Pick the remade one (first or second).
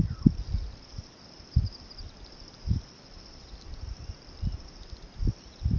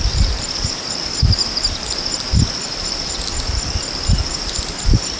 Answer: second